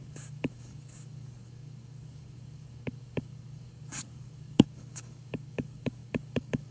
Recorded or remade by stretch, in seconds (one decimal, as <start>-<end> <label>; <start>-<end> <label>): 0.0-6.7 remade